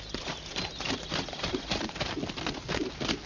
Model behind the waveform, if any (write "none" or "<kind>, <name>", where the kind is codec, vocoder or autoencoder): none